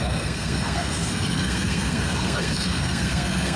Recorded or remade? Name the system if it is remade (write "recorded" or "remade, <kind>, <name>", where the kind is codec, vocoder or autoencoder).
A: remade, codec, SNAC